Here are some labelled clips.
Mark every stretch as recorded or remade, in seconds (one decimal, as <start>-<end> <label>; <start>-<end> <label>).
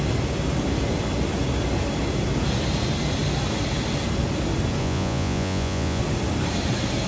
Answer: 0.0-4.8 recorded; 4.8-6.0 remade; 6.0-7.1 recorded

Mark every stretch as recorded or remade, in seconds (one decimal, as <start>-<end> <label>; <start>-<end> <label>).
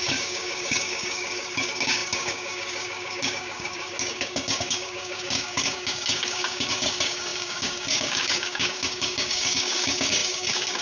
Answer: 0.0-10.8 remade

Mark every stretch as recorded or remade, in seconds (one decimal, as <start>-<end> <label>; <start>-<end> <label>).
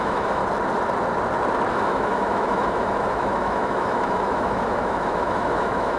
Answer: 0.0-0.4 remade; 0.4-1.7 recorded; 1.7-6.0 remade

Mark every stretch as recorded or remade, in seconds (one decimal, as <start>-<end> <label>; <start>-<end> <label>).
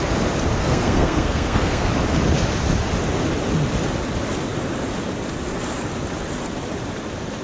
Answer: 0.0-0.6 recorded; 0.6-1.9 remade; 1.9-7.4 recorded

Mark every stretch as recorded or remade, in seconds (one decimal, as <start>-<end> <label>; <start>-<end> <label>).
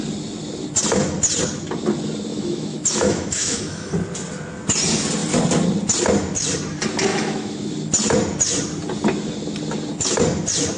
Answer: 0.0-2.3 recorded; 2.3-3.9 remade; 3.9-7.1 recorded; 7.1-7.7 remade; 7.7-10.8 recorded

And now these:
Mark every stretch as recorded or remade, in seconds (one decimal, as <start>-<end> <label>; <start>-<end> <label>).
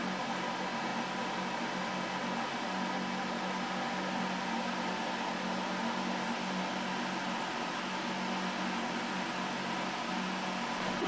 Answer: 0.0-11.1 recorded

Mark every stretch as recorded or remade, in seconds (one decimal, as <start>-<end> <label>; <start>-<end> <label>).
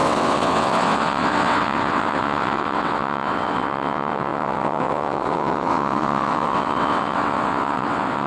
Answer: 0.0-8.3 remade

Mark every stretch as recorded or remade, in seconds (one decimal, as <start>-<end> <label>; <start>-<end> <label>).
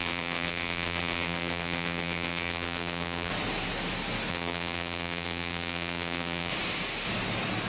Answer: 0.0-3.3 remade; 3.3-4.3 recorded; 4.3-6.5 remade; 6.5-7.7 recorded